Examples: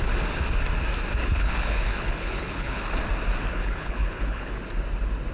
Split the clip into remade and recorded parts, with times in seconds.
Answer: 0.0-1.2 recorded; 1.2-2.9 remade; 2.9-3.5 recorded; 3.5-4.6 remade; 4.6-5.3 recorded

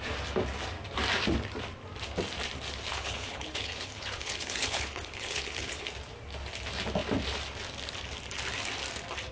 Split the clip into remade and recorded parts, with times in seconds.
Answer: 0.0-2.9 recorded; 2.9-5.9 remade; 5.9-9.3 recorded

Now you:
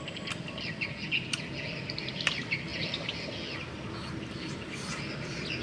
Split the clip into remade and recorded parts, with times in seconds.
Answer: 0.0-5.6 recorded

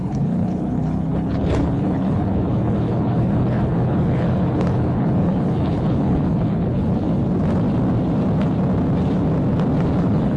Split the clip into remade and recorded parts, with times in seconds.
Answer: 0.0-7.2 remade; 7.2-10.0 recorded; 10.0-10.4 remade